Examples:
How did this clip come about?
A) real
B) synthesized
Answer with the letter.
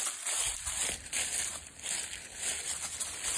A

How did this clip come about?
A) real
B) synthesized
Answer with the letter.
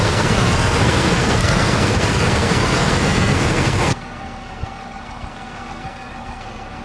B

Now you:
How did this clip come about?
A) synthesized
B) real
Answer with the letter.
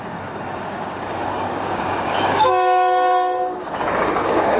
A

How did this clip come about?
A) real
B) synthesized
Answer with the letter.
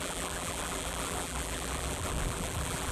B